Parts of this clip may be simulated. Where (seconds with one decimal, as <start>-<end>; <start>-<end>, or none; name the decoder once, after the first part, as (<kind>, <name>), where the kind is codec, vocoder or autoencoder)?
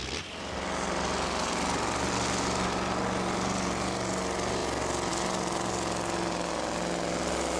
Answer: none